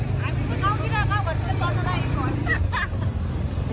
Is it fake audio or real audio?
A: real